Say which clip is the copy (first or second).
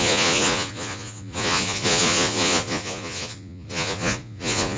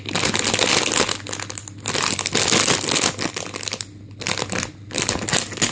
first